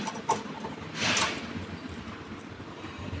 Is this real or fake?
real